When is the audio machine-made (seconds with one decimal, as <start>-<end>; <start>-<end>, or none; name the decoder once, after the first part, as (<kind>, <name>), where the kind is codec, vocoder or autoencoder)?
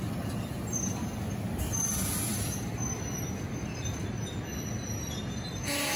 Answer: none